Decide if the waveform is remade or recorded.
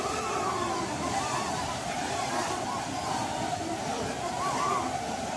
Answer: recorded